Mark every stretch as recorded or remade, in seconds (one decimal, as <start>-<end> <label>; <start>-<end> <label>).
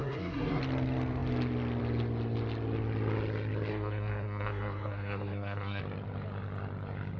0.0-0.6 remade; 0.6-3.7 recorded; 3.7-5.8 remade; 5.8-7.2 recorded